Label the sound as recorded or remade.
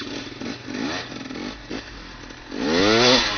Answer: recorded